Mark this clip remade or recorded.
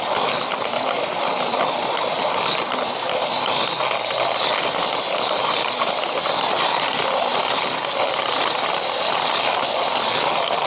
recorded